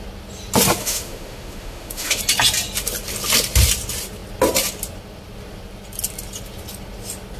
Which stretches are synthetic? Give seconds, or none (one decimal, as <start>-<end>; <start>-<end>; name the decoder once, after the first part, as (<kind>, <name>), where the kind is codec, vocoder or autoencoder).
0.8-2.2 (autoencoder, DAC-VAE)